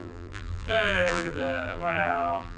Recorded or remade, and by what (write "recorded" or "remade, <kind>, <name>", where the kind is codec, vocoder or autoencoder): remade, vocoder, BigVGAN v2